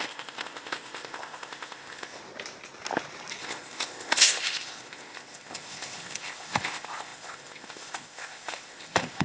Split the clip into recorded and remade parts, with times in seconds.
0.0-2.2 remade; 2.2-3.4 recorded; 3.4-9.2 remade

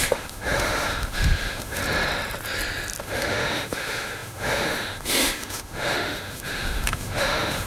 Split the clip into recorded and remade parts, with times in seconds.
0.0-1.8 remade; 1.8-3.0 recorded; 3.0-7.7 remade

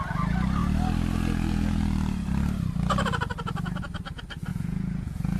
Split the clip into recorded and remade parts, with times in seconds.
0.0-4.5 recorded; 4.5-5.4 remade

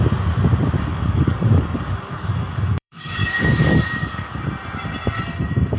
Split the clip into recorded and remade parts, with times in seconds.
0.0-0.9 recorded; 0.9-4.4 remade; 4.4-5.8 recorded

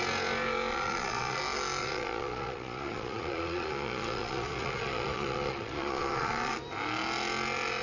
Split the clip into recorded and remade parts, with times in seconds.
0.0-0.7 recorded; 0.7-1.4 remade; 1.4-1.8 recorded; 1.8-6.5 remade; 6.5-7.8 recorded

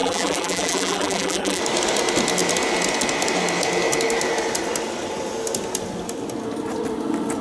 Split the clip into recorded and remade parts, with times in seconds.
0.0-1.6 remade; 1.6-7.4 recorded